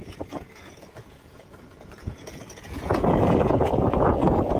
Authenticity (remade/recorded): remade